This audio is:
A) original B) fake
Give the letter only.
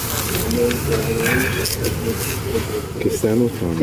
A